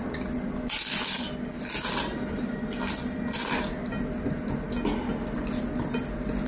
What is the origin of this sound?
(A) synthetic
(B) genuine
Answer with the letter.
B